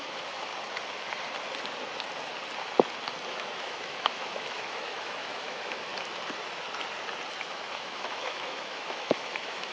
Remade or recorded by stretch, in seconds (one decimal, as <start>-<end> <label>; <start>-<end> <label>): 0.0-0.5 remade; 0.5-3.3 recorded; 3.3-5.9 remade; 5.9-7.4 recorded; 7.4-9.7 remade